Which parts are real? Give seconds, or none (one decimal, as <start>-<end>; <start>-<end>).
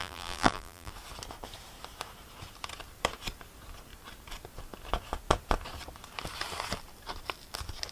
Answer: 0.9-7.9